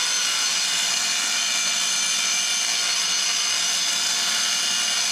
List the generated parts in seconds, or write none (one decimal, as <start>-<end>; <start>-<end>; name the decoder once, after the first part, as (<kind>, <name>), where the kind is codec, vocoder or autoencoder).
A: none